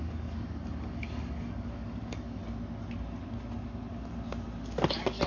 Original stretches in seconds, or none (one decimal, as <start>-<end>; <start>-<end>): 2.4-5.3